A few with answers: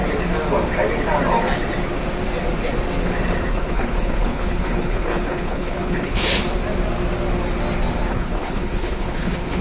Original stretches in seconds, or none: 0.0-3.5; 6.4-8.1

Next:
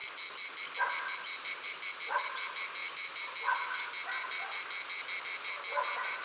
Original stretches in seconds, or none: 0.0-6.2

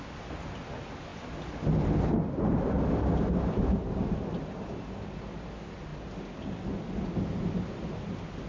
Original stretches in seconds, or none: 0.0-8.5

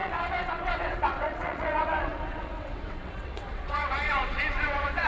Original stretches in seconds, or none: none